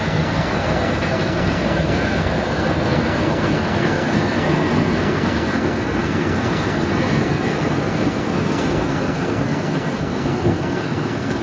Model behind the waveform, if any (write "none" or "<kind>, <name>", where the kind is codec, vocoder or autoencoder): codec, SNAC